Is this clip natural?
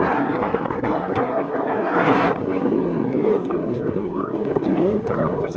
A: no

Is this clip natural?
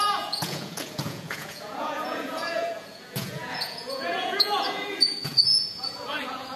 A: no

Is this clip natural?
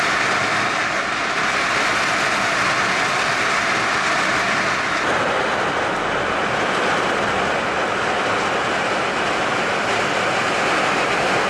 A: yes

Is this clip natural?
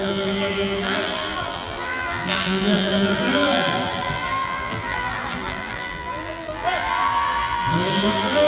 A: no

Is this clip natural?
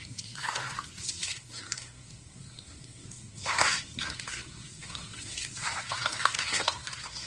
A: no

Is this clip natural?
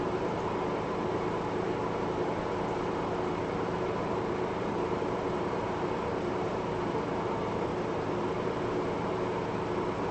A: no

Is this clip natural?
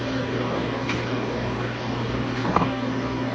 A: no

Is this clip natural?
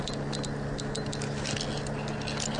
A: yes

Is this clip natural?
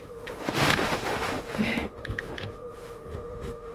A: no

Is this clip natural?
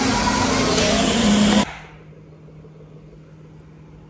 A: yes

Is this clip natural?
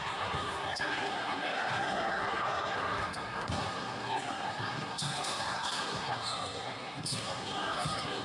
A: no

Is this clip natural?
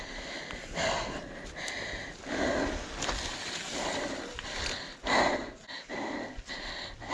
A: yes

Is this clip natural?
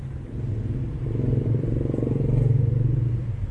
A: yes